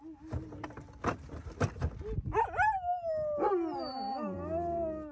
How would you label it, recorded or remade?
recorded